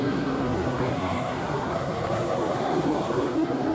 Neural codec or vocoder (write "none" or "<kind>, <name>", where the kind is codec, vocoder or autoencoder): codec, SNAC